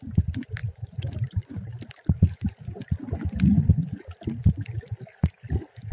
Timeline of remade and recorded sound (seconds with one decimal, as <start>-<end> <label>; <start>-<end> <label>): 0.0-0.6 recorded; 0.6-1.4 remade; 1.4-5.9 recorded